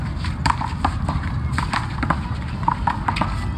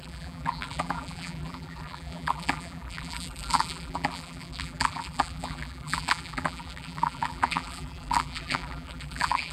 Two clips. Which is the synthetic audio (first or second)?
second